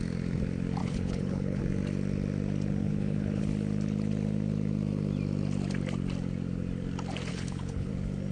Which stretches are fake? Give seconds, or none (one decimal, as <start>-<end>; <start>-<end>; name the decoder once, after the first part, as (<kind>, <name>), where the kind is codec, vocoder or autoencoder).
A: 0.8-1.6 (codec, HILCodec); 2.8-3.4; 7.3-7.9